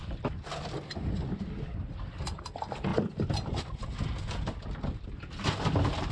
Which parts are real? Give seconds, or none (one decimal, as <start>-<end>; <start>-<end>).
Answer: 0.0-6.1